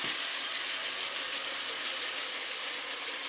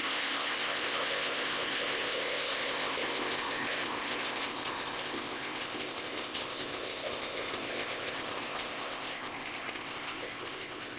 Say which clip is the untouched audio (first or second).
first